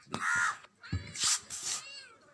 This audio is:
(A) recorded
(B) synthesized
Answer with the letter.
A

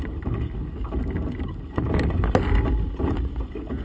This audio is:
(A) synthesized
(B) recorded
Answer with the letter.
B